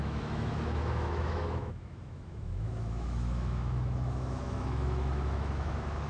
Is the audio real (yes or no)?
no